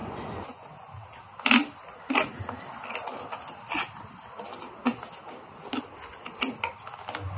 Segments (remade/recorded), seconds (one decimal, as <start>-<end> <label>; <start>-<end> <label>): 0.0-0.7 remade; 0.7-7.4 recorded